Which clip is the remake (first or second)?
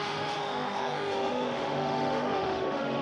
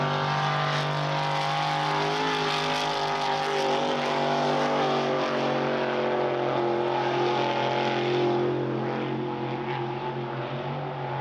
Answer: first